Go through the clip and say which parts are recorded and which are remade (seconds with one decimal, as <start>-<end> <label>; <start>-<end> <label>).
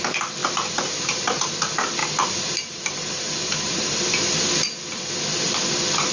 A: 0.0-0.4 recorded; 0.4-1.6 remade; 1.6-2.0 recorded; 2.0-4.0 remade; 4.0-6.1 recorded